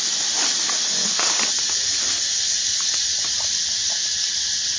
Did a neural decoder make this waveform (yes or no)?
no